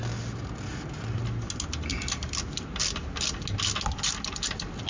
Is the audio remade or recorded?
recorded